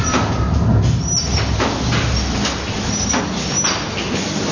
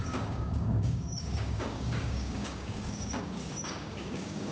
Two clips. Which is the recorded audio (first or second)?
first